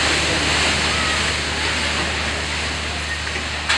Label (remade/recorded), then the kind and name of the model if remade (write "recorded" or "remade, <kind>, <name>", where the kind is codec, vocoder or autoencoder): recorded